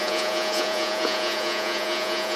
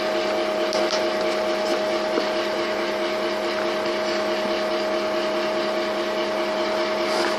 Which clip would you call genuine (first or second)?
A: second